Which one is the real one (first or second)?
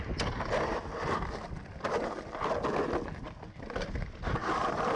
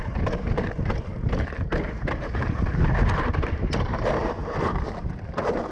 first